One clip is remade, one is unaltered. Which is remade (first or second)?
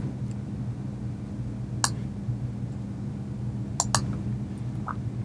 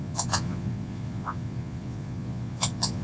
second